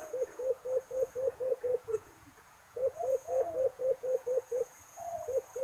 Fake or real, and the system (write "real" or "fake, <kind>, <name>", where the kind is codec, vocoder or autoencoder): fake, vocoder, Vocos